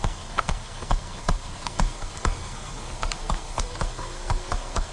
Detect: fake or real fake